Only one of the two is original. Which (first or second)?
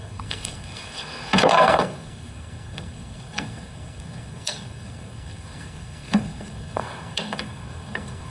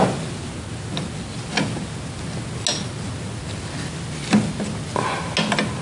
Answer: second